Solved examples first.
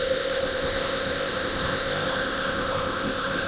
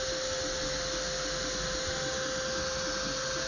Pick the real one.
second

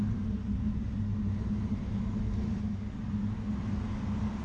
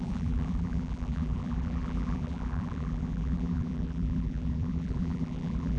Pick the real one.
first